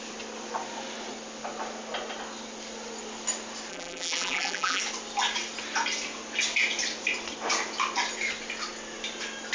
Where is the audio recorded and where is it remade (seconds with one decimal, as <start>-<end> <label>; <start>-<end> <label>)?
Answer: 0.0-3.7 recorded; 3.7-4.8 remade; 4.8-9.5 recorded

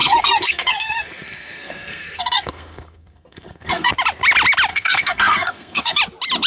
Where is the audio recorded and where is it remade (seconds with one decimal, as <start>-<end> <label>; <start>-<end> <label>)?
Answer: 0.0-3.9 remade; 3.9-4.7 recorded; 4.7-6.0 remade; 6.0-6.5 recorded

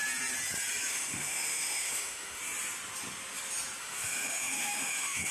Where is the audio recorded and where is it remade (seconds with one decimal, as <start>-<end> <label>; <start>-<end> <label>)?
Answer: 0.0-0.9 recorded; 0.9-2.4 remade; 2.4-3.8 recorded; 3.8-5.3 remade

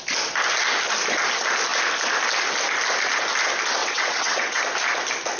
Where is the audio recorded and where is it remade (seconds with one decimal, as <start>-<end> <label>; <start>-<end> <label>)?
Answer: 0.0-3.8 recorded; 3.8-4.6 remade; 4.6-5.4 recorded

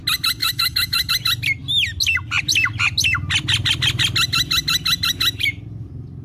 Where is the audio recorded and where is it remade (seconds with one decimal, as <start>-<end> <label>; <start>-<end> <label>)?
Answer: 0.0-0.4 recorded; 0.4-1.1 remade; 1.1-6.2 recorded

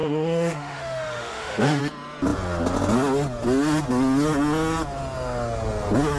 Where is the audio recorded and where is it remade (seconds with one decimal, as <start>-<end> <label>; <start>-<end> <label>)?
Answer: 0.0-1.8 remade; 1.8-6.2 recorded

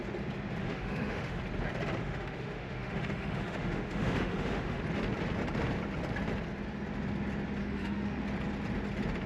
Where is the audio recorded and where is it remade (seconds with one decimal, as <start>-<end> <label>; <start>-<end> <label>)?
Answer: 0.0-0.6 recorded; 0.6-1.4 remade; 1.4-2.0 recorded; 2.0-4.8 remade; 4.8-7.6 recorded; 7.6-8.2 remade; 8.2-9.3 recorded